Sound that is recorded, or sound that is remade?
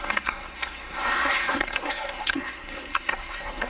remade